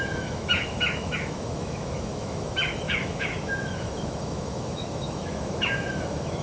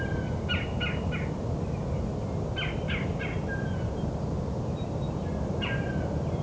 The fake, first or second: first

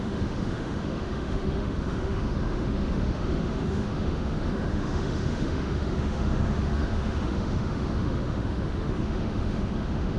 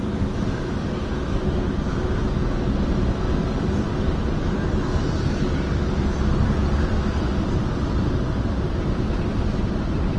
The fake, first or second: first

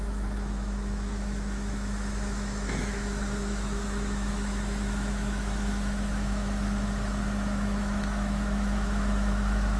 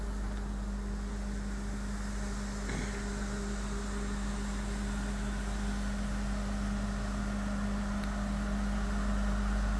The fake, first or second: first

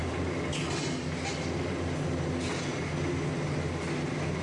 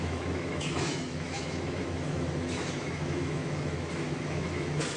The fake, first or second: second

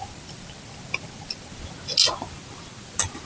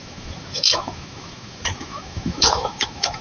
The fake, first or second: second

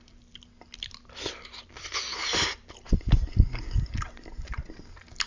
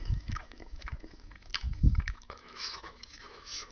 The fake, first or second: second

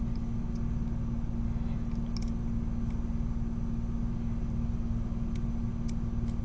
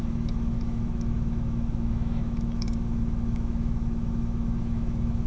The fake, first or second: second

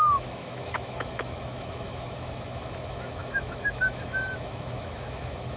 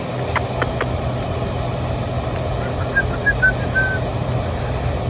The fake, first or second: first